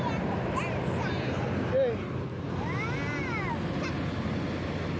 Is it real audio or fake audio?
real